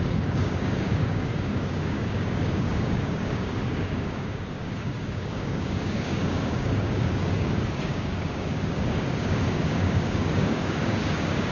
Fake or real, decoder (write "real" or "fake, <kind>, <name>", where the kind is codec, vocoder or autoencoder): fake, codec, DAC